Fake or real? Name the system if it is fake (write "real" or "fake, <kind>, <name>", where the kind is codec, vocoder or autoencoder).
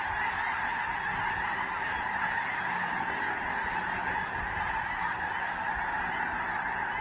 real